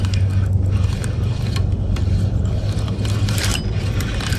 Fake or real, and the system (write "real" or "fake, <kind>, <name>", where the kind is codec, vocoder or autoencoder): real